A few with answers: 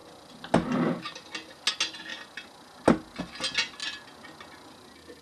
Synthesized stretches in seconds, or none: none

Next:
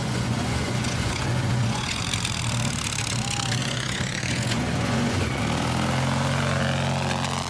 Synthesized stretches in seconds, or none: 0.0-2.0; 3.6-5.4

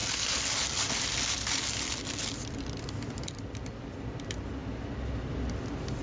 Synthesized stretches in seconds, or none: none

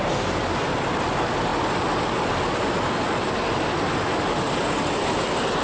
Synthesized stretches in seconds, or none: none

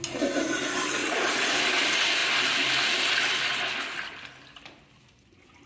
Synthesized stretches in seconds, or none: 1.0-1.6

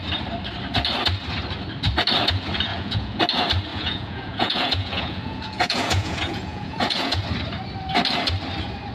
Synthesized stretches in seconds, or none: 2.7-3.2; 3.7-7.2

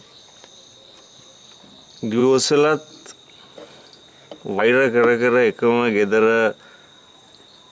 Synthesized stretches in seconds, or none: none